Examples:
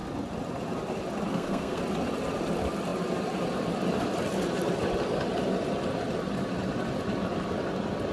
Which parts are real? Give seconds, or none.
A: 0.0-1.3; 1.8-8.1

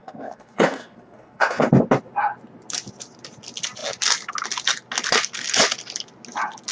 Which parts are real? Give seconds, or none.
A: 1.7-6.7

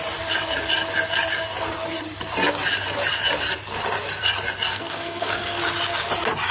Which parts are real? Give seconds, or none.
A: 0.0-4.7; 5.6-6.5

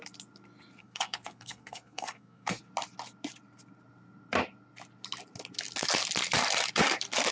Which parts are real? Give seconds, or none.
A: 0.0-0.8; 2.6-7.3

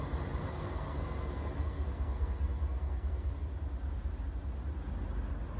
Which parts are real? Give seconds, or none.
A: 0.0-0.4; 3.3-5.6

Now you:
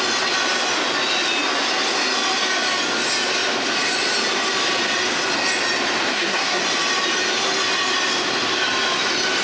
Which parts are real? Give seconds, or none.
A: 0.0-6.1; 6.6-9.4

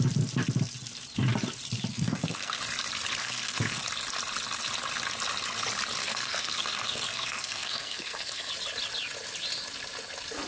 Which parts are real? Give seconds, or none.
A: 0.0-1.9; 2.6-3.2; 3.8-6.0; 8.5-10.5

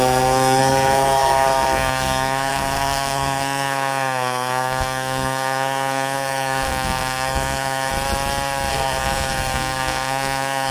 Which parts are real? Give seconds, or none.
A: 7.9-8.7